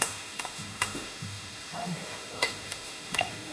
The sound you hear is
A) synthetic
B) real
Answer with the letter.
A